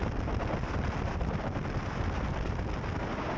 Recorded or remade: recorded